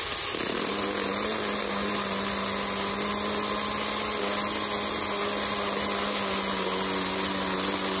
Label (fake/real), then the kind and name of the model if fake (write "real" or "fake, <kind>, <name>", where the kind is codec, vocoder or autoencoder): real